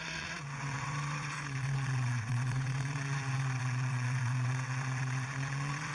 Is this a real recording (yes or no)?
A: no